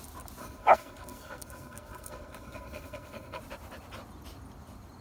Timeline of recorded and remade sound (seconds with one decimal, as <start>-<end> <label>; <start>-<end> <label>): 0.0-0.4 recorded; 0.4-3.4 remade; 3.4-5.0 recorded

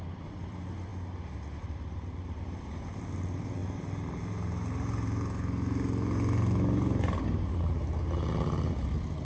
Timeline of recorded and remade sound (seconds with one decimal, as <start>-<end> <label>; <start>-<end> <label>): 0.0-9.2 recorded

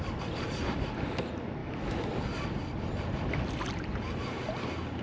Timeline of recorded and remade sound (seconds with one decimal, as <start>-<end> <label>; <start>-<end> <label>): 0.0-1.6 recorded; 1.6-2.1 remade; 2.1-5.0 recorded

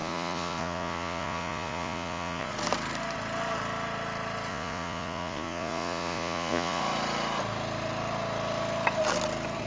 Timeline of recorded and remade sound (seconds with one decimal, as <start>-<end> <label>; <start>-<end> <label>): 0.0-2.5 remade; 2.5-4.5 recorded; 4.5-6.8 remade; 6.8-9.7 recorded

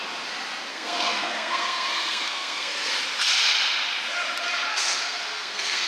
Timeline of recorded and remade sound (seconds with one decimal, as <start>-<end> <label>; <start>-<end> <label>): 0.0-0.7 recorded; 0.7-2.9 remade; 2.9-4.7 recorded; 4.7-5.9 remade

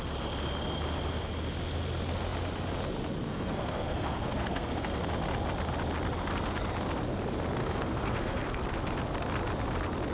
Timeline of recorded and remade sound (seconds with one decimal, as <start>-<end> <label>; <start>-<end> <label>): 0.0-3.3 recorded; 3.3-5.0 remade; 5.0-7.6 recorded; 7.6-8.4 remade; 8.4-10.1 recorded

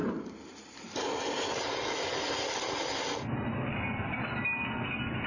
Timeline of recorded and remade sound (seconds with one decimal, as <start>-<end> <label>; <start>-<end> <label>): 0.0-5.3 recorded